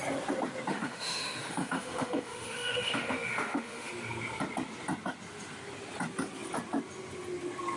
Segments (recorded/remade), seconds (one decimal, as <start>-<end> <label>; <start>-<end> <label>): 0.0-0.7 recorded; 0.7-3.9 remade; 3.9-7.8 recorded